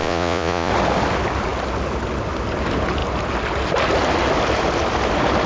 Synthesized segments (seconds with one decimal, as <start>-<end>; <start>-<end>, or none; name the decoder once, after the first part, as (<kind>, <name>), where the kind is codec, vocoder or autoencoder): 0.0-0.7 (vocoder, Vocos)